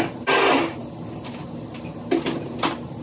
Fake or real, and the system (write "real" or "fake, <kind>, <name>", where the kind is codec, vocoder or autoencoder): real